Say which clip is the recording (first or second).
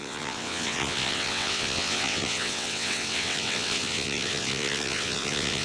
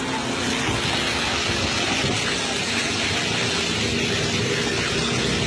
second